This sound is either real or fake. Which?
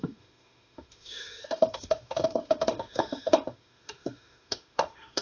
fake